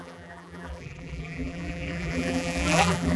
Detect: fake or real fake